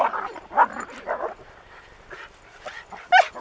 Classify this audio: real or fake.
real